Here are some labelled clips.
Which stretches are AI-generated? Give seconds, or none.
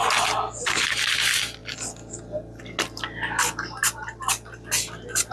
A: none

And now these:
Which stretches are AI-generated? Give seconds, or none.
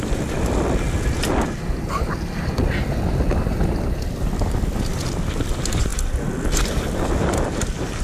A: none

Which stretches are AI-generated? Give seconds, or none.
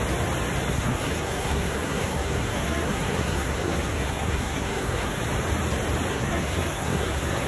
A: 0.7-5.2 (codec, SNAC); 6.1-7.5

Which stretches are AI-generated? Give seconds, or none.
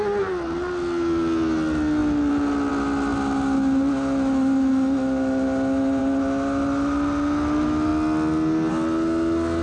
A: none